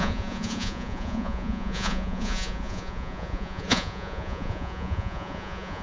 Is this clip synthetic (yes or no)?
yes